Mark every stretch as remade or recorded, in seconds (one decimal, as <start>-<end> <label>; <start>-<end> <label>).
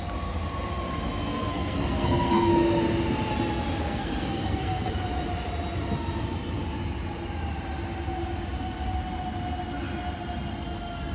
0.0-1.3 recorded; 1.3-2.5 remade; 2.5-3.8 recorded; 3.8-4.9 remade; 4.9-11.1 recorded